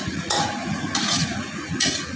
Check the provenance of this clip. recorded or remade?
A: remade